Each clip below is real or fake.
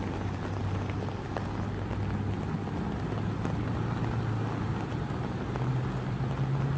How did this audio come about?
real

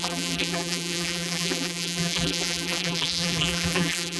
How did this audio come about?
fake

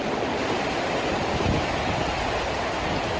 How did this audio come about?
real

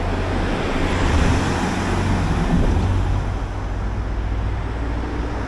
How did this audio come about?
real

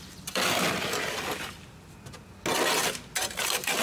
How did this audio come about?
real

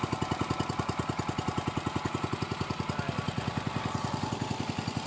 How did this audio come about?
real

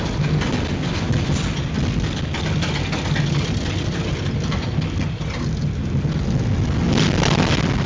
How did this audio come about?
real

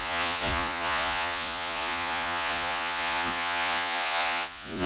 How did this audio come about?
fake